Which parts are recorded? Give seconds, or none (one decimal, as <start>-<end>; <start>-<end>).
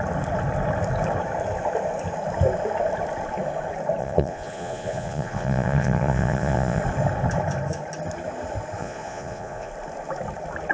0.0-4.0; 6.8-8.8; 9.7-10.7